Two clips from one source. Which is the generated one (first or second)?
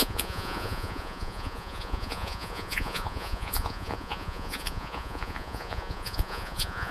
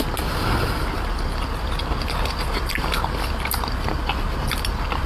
first